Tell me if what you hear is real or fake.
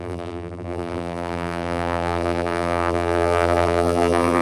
fake